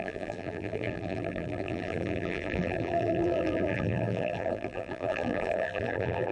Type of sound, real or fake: fake